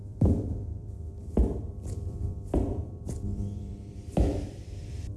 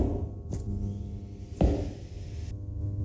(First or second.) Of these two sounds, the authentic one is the second